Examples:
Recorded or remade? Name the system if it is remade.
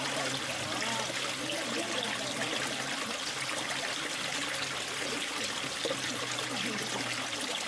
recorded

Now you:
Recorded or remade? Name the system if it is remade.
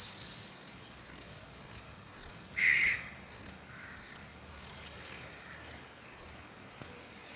remade, codec, DAC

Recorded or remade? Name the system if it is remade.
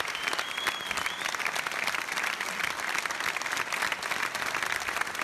recorded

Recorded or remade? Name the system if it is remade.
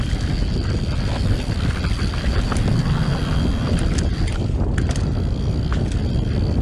recorded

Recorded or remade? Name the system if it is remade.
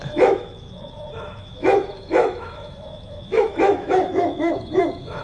remade, autoencoder, DAC-VAE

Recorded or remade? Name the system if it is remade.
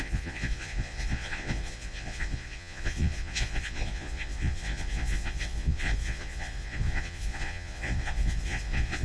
remade, vocoder, Vocos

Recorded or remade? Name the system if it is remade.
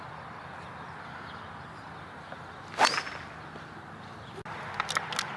recorded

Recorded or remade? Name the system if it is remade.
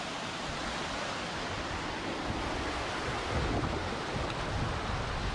recorded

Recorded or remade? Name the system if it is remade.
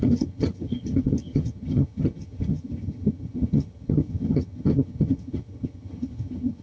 remade, vocoder, HiFi-GAN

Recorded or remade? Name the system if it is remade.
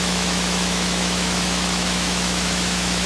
remade, autoencoder, DAC-VAE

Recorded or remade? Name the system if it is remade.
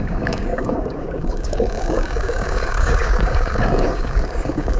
remade, codec, DAC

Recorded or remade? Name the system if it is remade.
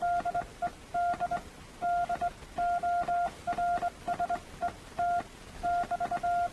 recorded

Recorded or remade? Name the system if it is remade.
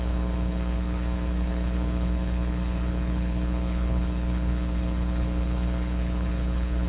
remade, codec, HILCodec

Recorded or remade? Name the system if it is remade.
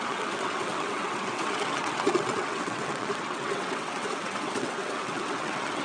remade, vocoder, WaveNeXt